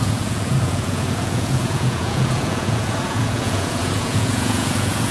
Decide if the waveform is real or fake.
fake